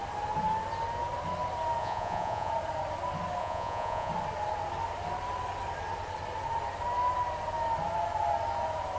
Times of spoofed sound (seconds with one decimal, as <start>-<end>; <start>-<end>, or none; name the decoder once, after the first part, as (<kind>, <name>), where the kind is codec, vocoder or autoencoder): 1.8-2.5 (vocoder, Vocos); 3.4-4.1